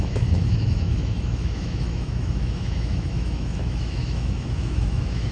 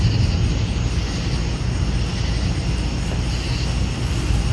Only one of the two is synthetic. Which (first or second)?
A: first